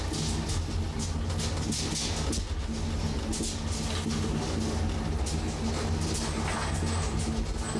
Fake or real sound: real